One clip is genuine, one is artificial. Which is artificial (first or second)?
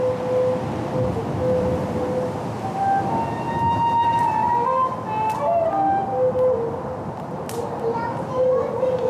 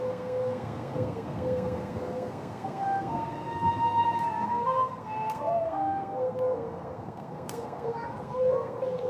second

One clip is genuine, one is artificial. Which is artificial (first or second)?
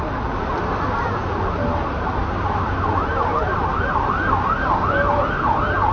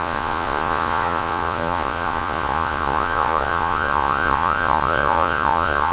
second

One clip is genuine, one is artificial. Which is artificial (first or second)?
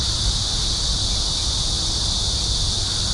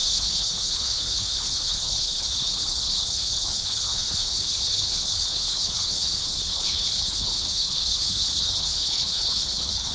second